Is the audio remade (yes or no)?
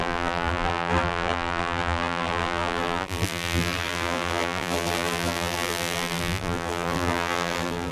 yes